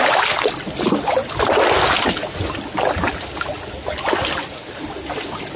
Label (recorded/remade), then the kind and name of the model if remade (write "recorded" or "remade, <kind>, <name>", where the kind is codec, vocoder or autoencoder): recorded